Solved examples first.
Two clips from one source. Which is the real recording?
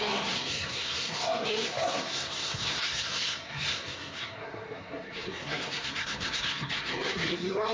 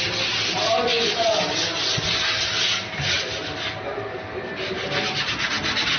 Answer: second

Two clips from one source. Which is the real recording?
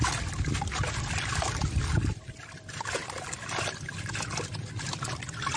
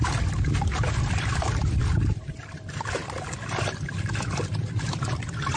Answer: first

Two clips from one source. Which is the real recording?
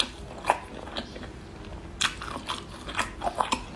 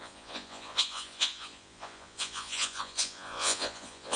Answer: first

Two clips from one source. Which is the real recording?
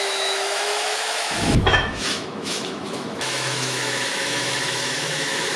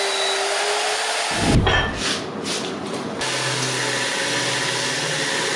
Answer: second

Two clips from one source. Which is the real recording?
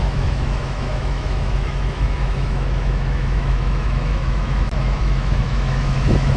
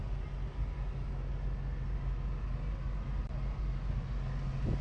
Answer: second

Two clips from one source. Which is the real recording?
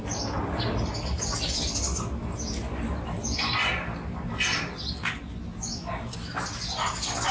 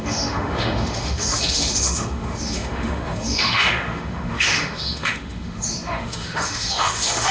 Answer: first